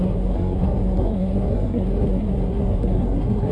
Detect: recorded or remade remade